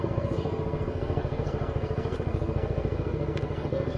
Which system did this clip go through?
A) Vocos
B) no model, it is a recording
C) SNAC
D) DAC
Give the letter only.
C